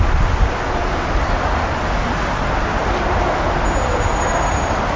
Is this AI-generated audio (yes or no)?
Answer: no